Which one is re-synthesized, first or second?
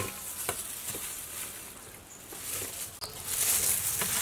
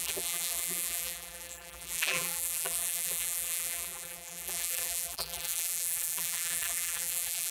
second